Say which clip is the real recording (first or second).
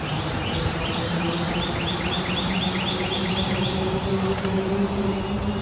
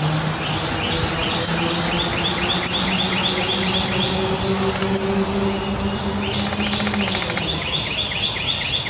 second